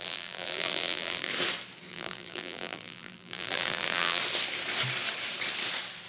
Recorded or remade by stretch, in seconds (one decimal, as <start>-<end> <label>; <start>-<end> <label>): 0.0-1.3 remade; 1.3-1.9 recorded; 1.9-4.2 remade; 4.2-6.1 recorded